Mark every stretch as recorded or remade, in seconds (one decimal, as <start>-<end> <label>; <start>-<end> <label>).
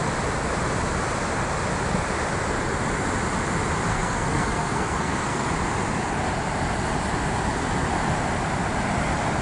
0.0-3.9 recorded; 3.9-5.5 remade; 5.5-9.4 recorded